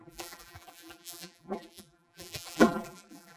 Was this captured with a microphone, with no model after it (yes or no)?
no